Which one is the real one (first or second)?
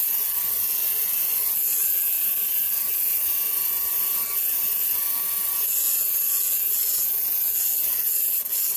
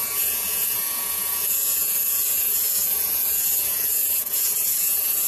first